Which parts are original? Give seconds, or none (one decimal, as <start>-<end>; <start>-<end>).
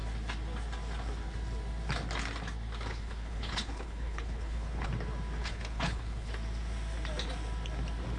0.0-2.9; 4.9-5.4; 6.3-8.2